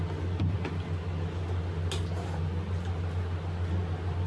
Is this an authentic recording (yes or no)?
yes